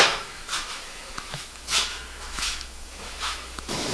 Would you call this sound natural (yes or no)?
no